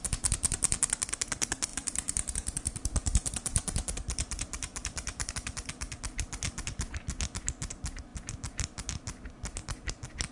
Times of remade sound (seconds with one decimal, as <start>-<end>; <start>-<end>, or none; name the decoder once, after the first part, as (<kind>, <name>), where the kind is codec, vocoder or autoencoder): 1.7-5.3 (vocoder, BigVGAN v2)